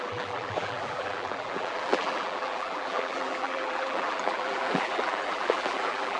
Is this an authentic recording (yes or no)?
no